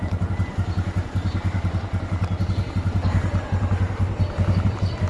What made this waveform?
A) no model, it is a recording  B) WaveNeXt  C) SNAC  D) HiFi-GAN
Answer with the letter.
A